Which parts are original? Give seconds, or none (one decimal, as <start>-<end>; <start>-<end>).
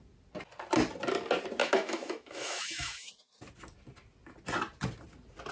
0.0-1.6; 3.1-5.5